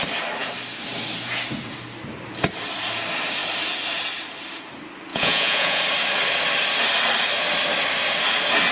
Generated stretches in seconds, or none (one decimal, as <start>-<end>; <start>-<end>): 5.1-5.8